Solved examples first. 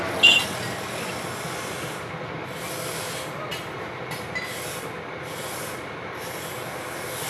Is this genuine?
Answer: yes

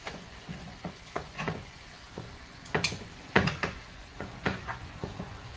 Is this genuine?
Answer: no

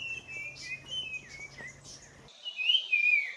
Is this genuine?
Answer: yes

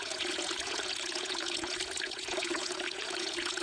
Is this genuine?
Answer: no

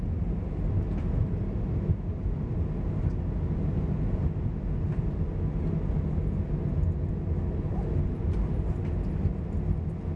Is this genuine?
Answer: yes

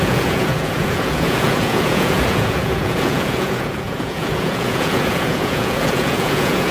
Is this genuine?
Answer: no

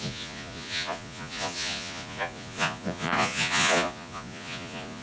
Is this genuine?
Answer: no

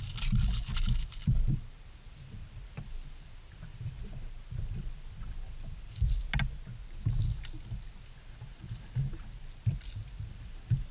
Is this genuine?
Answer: yes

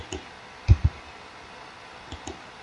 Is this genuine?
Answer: yes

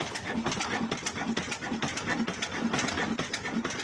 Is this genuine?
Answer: yes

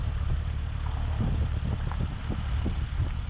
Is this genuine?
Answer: yes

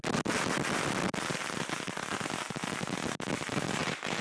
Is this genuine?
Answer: yes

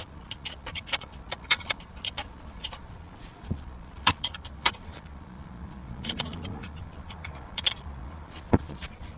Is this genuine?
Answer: no